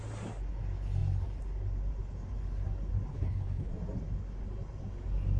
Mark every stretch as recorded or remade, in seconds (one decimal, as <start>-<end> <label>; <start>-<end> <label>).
0.0-3.1 recorded; 3.1-3.7 remade; 3.7-5.4 recorded